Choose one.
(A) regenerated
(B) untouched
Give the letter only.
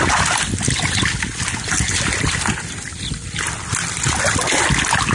B